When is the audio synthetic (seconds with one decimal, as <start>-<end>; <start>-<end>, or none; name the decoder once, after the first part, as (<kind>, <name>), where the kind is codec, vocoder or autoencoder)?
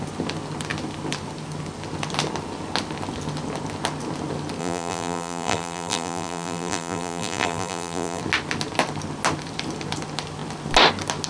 4.6-8.2 (vocoder, BigVGAN v2)